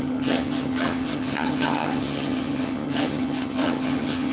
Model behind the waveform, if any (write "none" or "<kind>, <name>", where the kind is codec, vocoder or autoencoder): vocoder, HiFi-GAN